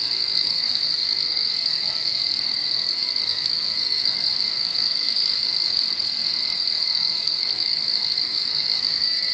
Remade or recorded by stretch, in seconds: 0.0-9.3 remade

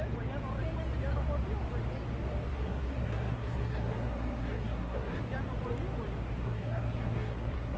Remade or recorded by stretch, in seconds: 0.0-2.5 recorded; 2.5-5.2 remade; 5.2-6.4 recorded; 6.4-7.8 remade

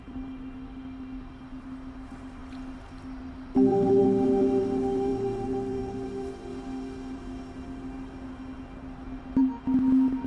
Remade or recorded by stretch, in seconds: 0.0-10.3 recorded

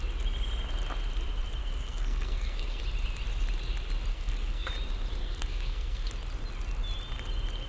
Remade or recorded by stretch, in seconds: 0.0-1.6 recorded; 1.6-2.8 remade; 2.8-4.1 recorded; 4.1-4.7 remade; 4.7-5.2 recorded; 5.2-6.1 remade; 6.1-7.7 recorded